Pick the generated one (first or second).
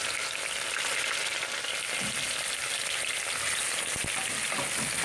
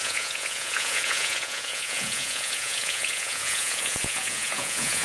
second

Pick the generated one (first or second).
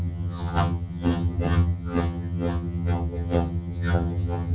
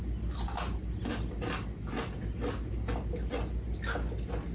first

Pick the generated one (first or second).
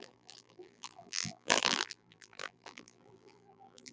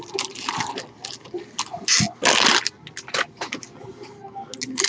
first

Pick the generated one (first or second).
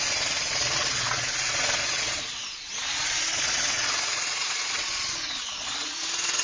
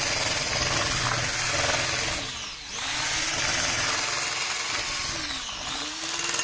first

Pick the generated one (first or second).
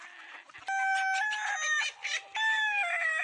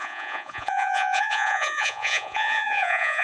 second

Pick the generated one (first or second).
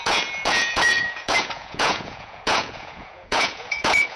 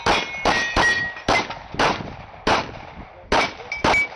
first